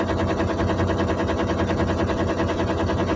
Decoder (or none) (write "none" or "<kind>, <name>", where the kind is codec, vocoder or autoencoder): none